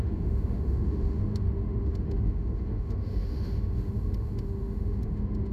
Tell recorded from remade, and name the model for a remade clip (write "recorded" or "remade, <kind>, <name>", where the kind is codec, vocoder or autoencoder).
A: remade, autoencoder, DAC-VAE